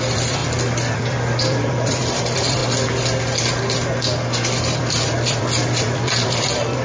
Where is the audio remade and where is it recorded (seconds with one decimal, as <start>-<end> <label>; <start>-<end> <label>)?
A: 0.0-0.4 remade; 0.4-0.9 recorded; 0.9-2.6 remade; 2.6-4.6 recorded; 4.6-6.8 remade